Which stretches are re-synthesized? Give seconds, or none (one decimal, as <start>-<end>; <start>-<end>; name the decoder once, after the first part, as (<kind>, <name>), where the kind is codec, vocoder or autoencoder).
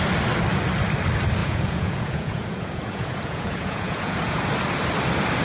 1.4-4.4 (vocoder, Vocos)